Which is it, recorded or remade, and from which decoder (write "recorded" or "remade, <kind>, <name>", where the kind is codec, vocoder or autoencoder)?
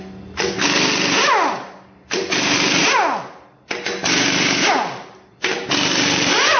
recorded